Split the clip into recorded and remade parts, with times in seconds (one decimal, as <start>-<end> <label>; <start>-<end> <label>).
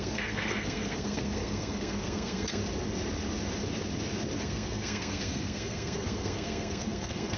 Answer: 0.0-2.6 remade; 2.6-4.4 recorded; 4.4-7.4 remade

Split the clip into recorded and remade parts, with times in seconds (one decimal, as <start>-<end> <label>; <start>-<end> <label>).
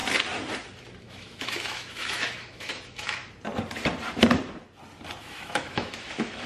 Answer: 0.0-1.0 recorded; 1.0-3.2 remade; 3.2-5.2 recorded; 5.2-6.5 remade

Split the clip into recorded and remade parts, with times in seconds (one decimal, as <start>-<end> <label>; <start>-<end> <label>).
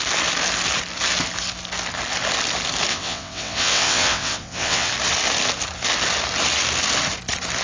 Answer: 0.0-2.9 recorded; 2.9-4.9 remade; 4.9-7.6 recorded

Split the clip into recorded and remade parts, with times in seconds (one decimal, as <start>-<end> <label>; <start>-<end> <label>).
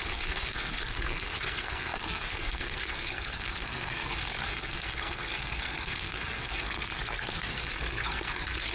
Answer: 0.0-8.7 remade